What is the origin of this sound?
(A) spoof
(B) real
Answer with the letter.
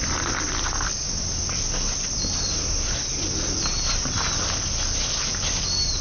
B